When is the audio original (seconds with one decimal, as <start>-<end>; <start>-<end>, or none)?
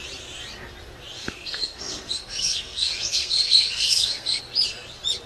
0.0-1.2; 4.4-5.3